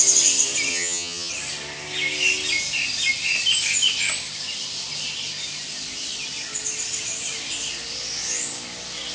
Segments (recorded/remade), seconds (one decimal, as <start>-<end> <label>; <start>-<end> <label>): 0.0-0.7 recorded; 0.7-1.3 remade; 1.3-9.1 recorded